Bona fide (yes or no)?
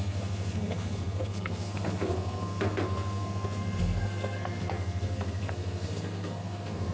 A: no